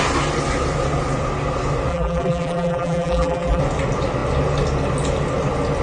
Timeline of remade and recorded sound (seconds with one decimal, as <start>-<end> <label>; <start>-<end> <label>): 0.0-1.9 recorded; 1.9-3.6 remade; 3.6-5.8 recorded